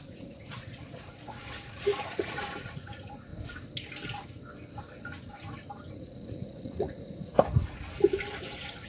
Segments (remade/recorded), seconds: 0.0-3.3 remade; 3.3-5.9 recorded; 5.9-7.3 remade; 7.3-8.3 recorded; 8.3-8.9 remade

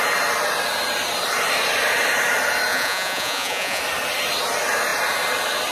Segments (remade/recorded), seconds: 0.0-2.7 recorded; 2.7-3.8 remade; 3.8-5.7 recorded

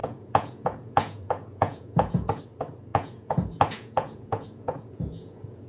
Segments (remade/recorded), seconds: 0.0-2.4 remade; 2.4-2.9 recorded; 2.9-5.7 remade

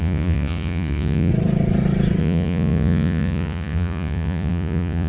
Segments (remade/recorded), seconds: 0.0-1.3 remade; 1.3-2.2 recorded; 2.2-5.1 remade

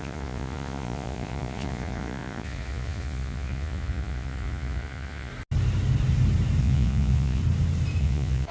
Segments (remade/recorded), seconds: 0.0-5.3 remade; 5.3-6.6 recorded; 6.6-7.4 remade; 7.4-8.0 recorded; 8.0-8.5 remade

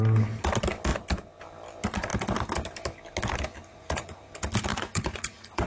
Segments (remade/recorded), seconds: 0.0-3.7 recorded; 3.7-4.3 remade; 4.3-4.7 recorded; 4.7-5.7 remade